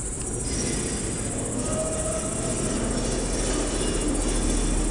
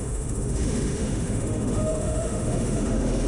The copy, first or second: second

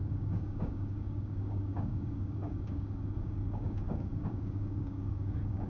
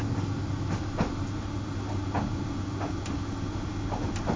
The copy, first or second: first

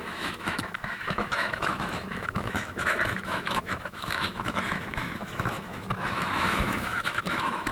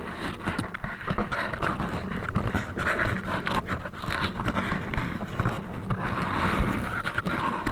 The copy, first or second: first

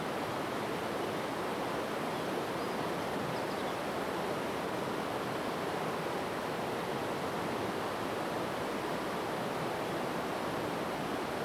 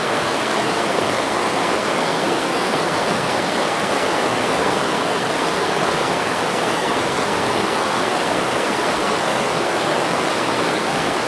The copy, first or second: second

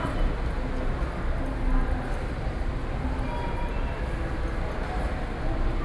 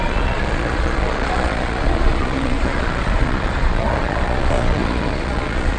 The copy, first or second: second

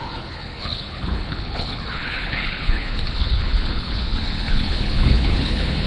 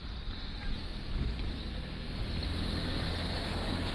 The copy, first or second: first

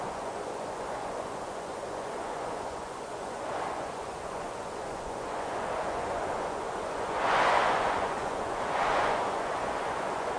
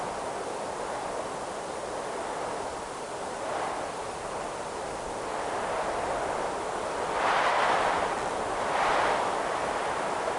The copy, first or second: first